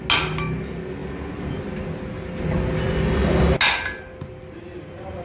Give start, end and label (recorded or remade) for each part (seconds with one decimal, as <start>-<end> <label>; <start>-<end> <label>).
0.0-5.2 recorded